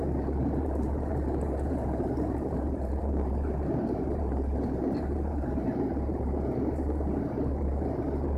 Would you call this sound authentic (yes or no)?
no